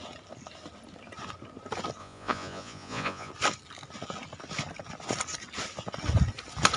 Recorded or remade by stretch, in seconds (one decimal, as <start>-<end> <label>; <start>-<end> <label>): 0.0-2.0 recorded; 2.0-3.3 remade; 3.3-6.8 recorded